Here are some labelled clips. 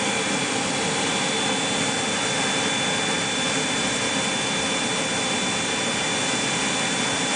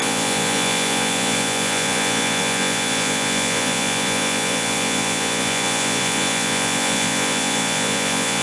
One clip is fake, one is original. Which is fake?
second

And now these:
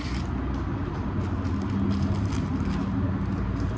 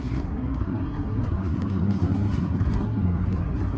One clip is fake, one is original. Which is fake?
second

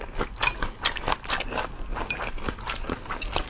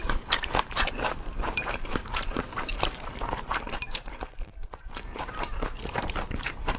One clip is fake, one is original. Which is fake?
second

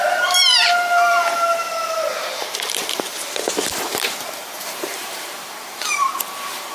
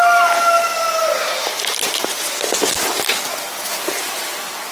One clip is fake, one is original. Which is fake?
first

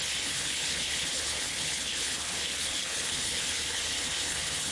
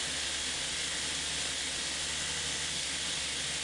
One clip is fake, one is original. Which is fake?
first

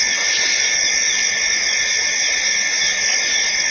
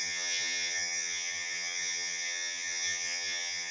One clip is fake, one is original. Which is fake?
second